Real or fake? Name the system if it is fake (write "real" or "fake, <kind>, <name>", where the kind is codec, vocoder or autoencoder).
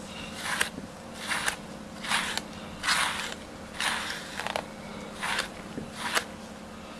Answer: real